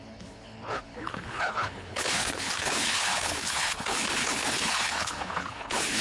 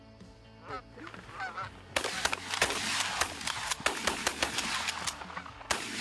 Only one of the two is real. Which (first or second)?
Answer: second